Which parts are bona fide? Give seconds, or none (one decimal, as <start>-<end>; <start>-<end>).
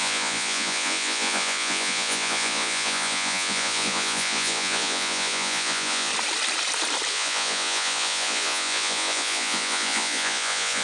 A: 6.1-7.1